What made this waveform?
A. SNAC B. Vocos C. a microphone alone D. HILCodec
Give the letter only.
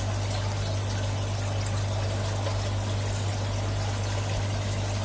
C